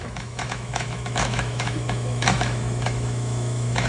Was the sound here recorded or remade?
remade